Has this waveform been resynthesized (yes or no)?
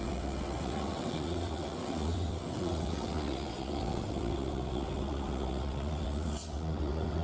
yes